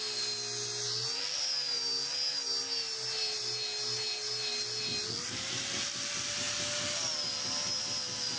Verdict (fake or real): real